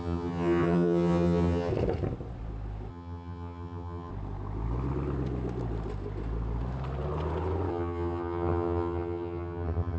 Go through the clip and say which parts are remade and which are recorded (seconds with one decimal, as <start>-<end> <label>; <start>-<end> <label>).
0.0-1.7 remade; 1.7-2.9 recorded; 2.9-4.1 remade; 4.1-7.7 recorded; 7.7-10.0 remade